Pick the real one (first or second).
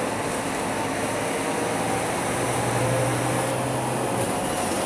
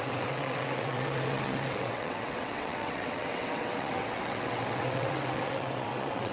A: first